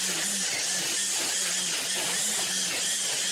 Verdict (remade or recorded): recorded